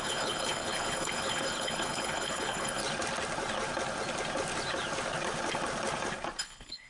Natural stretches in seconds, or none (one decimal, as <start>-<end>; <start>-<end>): 2.8-6.4